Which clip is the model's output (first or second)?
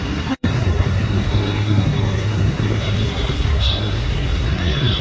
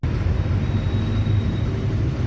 first